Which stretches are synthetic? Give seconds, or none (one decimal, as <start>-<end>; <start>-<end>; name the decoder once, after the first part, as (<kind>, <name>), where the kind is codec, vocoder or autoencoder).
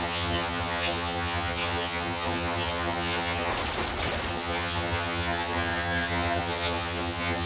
0.0-3.5 (vocoder, HiFi-GAN); 4.3-7.5